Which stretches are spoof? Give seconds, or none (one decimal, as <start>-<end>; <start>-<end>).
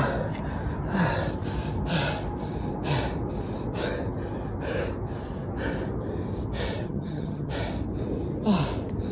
6.8-7.5